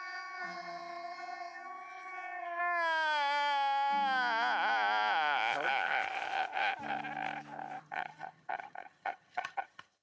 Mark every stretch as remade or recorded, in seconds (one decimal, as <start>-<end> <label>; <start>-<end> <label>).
0.0-2.6 remade; 2.6-7.8 recorded; 7.8-10.0 remade